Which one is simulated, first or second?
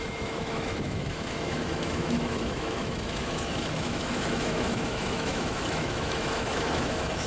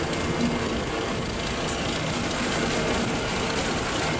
first